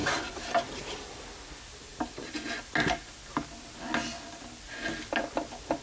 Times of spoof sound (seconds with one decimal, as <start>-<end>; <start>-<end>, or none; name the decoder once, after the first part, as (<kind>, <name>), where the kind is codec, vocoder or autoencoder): 0.0-1.2 (vocoder, BigVGAN v2); 1.9-2.4